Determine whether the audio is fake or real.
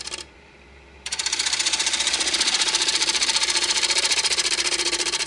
fake